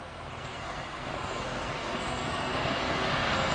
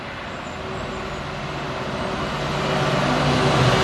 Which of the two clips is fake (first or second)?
first